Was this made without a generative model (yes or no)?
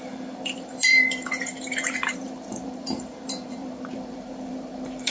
no